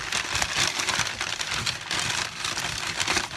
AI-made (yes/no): no